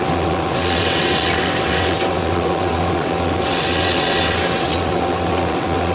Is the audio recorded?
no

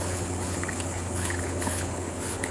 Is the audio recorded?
no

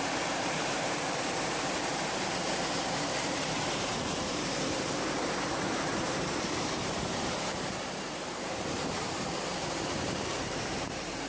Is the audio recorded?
no